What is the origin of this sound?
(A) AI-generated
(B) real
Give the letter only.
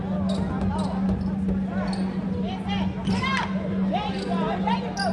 B